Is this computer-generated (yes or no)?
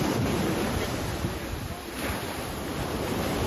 no